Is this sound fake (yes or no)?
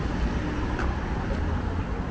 no